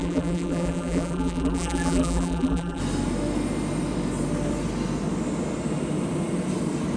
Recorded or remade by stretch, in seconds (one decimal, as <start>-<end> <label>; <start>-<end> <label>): 0.0-2.8 remade; 2.8-7.0 recorded